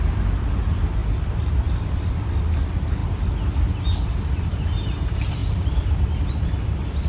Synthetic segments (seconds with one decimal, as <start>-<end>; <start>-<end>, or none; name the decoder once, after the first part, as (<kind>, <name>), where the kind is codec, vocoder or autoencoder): none